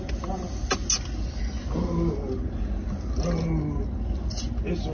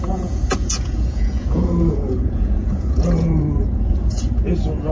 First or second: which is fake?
second